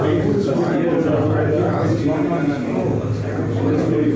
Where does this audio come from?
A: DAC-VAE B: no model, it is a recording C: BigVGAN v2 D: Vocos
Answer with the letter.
B